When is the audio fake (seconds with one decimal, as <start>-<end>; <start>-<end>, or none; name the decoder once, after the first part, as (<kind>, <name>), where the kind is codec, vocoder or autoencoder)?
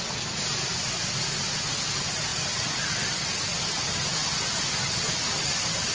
2.3-3.4 (vocoder, BigVGAN v2)